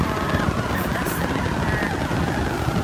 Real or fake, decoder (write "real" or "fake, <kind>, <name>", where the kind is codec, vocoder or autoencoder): real